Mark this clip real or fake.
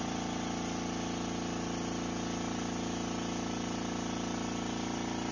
real